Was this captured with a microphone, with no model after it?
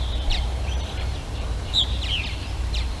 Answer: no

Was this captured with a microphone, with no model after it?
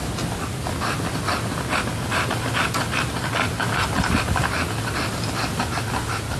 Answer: yes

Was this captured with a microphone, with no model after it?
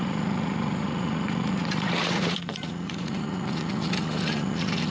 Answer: no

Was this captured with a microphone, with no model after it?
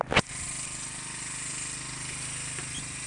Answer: yes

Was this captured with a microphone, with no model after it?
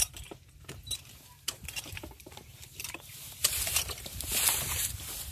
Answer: no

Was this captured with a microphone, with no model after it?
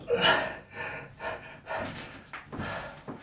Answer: yes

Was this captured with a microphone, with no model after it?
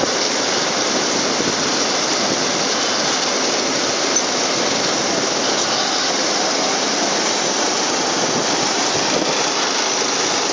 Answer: yes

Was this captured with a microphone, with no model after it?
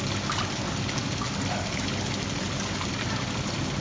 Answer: yes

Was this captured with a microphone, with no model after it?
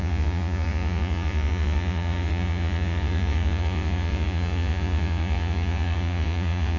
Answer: no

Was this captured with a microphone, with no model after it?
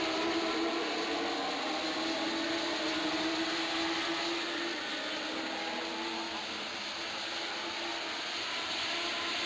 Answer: yes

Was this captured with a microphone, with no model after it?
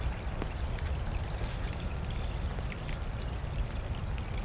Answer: yes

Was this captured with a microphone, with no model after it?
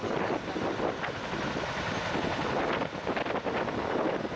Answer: yes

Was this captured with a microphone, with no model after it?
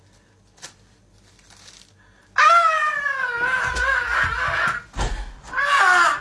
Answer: yes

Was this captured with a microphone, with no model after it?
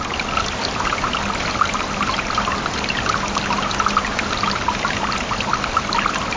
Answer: yes